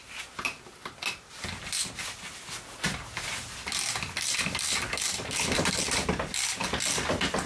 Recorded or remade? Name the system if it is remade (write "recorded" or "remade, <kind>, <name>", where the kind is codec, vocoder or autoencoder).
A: recorded